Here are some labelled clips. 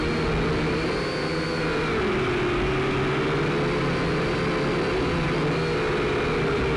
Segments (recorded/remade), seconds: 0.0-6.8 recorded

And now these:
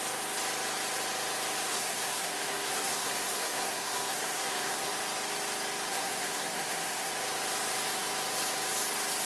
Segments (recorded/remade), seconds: 0.0-1.7 recorded; 1.7-4.9 remade; 4.9-5.9 recorded; 5.9-7.1 remade; 7.1-9.2 recorded

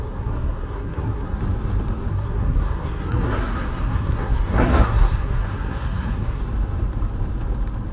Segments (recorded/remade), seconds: 0.0-1.4 remade; 1.4-2.1 recorded; 2.1-6.4 remade; 6.4-7.9 recorded